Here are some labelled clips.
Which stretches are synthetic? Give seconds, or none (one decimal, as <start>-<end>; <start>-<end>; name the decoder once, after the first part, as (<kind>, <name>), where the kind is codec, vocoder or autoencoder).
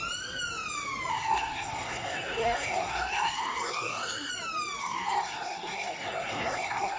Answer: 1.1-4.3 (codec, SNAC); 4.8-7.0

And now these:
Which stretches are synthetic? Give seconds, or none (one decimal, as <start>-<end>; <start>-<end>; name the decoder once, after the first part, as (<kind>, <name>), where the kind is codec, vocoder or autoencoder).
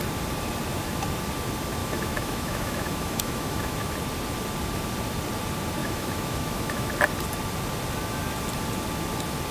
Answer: 1.8-3.9 (autoencoder, DAC-VAE); 5.8-6.9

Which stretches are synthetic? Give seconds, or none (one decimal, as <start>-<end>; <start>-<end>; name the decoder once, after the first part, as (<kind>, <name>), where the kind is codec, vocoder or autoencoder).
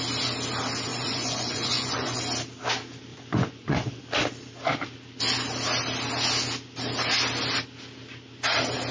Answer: 0.9-2.2 (vocoder, Vocos); 3.1-4.0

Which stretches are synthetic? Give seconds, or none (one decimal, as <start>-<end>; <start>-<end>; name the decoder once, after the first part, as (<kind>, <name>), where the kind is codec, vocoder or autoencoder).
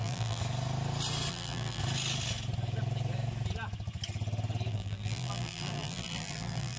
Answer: 0.0-0.4 (vocoder, BigVGAN v2); 1.3-1.8; 4.7-6.8